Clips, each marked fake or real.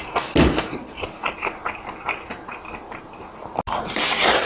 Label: real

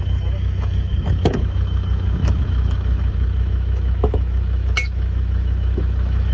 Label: fake